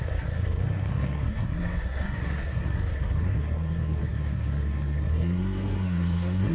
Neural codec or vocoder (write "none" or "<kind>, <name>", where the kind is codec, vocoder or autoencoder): codec, SNAC